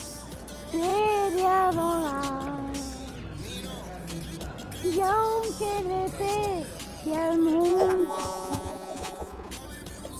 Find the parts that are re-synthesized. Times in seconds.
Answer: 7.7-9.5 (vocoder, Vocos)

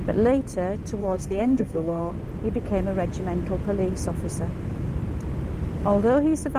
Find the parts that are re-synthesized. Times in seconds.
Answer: 1.0-2.1 (codec, SNAC)

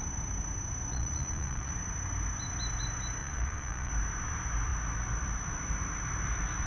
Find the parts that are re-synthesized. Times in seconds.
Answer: 0.9-1.7 (vocoder, Vocos); 3.2-3.9

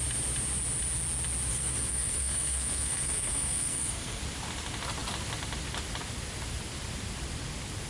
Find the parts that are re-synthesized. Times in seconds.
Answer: 1.5-4.2 (codec, SNAC)